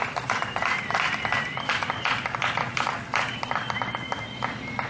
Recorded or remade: recorded